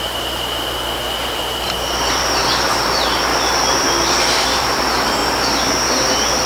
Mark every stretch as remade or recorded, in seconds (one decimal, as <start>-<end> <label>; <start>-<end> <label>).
0.0-6.5 remade